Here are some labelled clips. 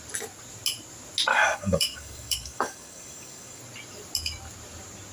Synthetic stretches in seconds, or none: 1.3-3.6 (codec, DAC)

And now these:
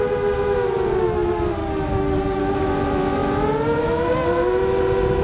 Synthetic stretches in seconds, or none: 1.6-2.4 (codec, DAC)